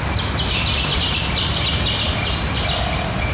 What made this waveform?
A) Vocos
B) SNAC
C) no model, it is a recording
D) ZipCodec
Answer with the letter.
C